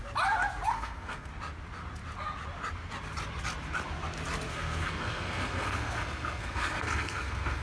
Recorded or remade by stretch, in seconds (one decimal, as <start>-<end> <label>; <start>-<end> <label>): 0.0-0.7 recorded; 0.7-1.3 remade; 1.3-4.5 recorded; 4.5-7.6 remade